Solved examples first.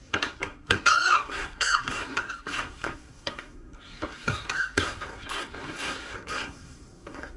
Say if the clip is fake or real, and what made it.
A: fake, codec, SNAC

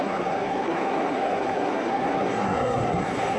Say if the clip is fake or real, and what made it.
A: fake, codec, SNAC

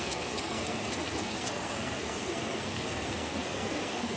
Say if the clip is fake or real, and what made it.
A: fake, codec, SNAC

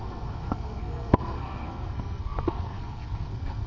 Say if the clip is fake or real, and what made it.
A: fake, codec, SNAC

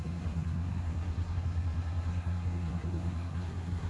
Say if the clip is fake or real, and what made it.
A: fake, codec, SNAC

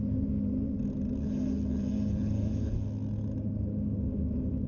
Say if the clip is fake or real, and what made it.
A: real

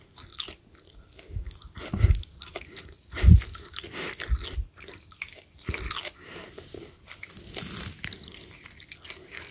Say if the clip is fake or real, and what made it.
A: real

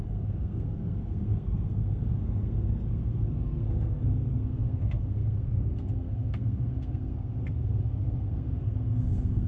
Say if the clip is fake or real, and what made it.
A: fake, codec, SNAC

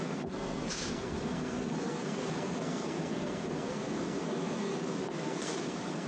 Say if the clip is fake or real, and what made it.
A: fake, codec, SNAC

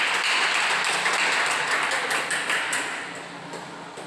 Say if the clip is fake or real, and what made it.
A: real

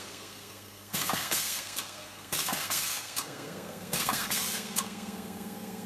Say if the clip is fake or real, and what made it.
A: fake, codec, SNAC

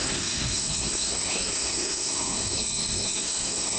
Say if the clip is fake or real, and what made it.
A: fake, codec, SNAC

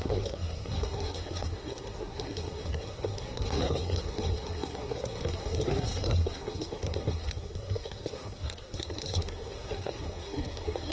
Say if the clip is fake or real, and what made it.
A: fake, codec, SNAC